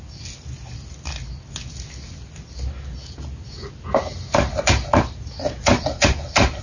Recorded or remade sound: recorded